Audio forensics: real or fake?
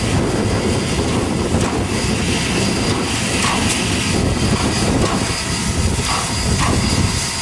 real